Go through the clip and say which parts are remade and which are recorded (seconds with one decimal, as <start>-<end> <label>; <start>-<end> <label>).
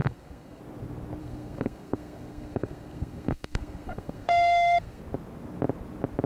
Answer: 0.0-0.6 remade; 0.6-1.2 recorded; 1.2-5.0 remade; 5.0-6.3 recorded